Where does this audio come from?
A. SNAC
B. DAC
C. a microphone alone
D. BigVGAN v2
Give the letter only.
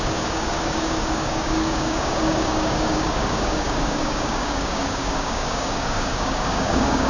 B